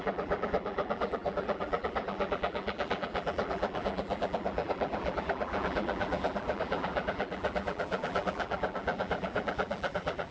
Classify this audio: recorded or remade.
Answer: remade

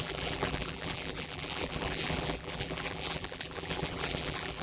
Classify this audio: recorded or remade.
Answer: remade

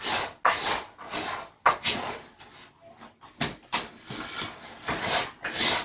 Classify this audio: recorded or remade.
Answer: recorded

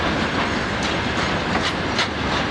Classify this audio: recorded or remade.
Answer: recorded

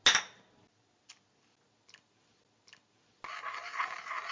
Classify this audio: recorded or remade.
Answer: recorded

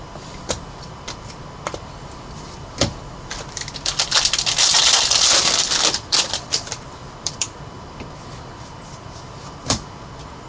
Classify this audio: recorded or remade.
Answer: remade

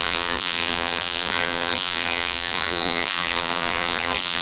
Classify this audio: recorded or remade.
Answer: remade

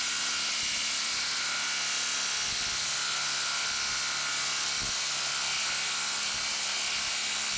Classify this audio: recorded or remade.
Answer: recorded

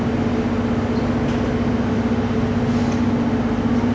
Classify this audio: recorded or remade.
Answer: recorded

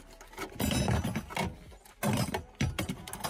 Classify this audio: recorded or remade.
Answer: recorded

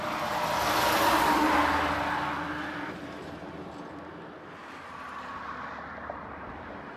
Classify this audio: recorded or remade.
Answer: recorded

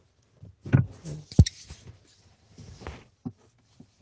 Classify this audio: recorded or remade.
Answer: recorded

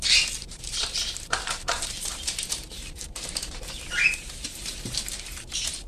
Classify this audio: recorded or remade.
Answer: remade